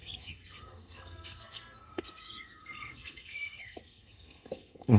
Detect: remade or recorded remade